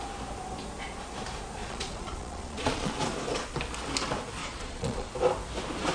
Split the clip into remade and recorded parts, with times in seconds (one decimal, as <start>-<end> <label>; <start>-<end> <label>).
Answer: 0.0-1.6 recorded; 1.6-2.9 remade; 2.9-4.4 recorded; 4.4-5.1 remade; 5.1-5.9 recorded